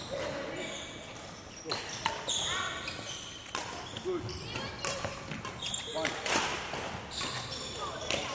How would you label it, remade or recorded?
recorded